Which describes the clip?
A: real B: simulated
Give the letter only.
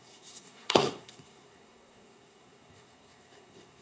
B